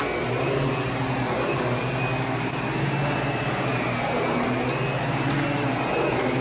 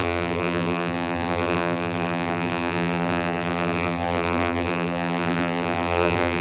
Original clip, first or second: first